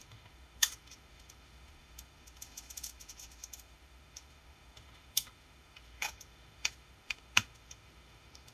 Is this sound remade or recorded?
remade